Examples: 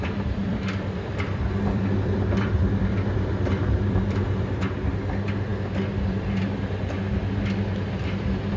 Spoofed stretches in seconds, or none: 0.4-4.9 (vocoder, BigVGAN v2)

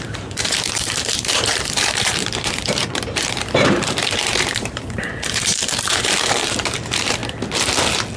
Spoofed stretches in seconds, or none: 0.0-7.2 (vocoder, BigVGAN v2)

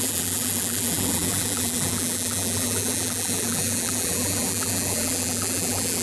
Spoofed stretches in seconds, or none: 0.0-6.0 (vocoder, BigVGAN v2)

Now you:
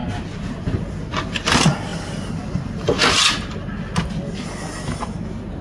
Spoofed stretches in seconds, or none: none

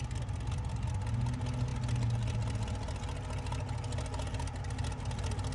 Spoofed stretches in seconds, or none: none

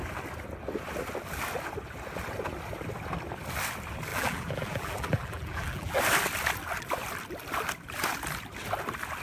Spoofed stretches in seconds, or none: 4.1-6.0 (vocoder, BigVGAN v2)